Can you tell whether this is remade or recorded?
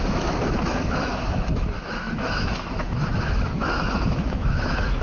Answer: remade